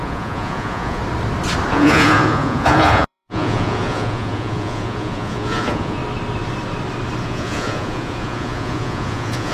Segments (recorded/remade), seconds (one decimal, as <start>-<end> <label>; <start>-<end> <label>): 0.0-1.0 remade; 1.0-1.7 recorded; 1.7-6.0 remade; 6.0-7.2 recorded; 7.2-9.5 remade